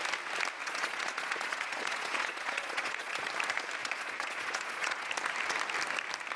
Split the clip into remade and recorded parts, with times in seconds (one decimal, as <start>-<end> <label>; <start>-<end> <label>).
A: 0.0-0.6 recorded; 0.6-3.3 remade; 3.3-3.8 recorded; 3.8-5.1 remade; 5.1-6.4 recorded